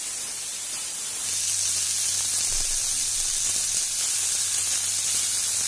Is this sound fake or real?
real